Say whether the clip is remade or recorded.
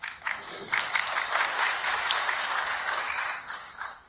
remade